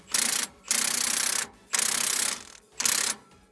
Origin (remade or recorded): recorded